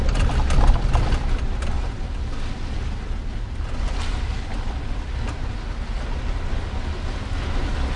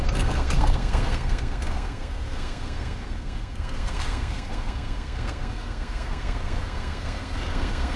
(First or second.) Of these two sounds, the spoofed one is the second